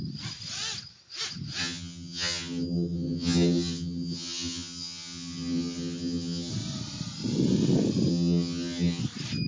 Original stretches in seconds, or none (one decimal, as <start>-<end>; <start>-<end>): 0.0-1.6; 6.5-8.1; 9.0-9.5